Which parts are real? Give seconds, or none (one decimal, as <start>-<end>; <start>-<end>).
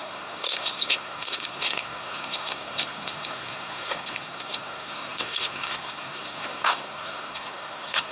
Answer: none